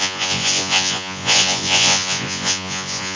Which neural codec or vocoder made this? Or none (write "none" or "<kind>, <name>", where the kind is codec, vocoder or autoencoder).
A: vocoder, Vocos